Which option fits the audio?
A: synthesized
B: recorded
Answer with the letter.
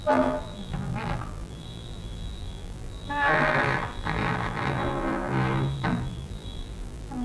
A